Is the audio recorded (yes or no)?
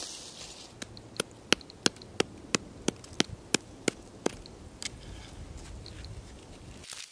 yes